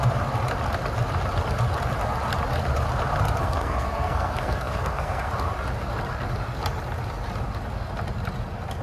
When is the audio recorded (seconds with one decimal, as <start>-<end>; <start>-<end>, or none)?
0.0-3.4; 5.3-8.8